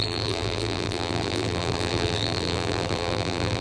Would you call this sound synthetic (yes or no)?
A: yes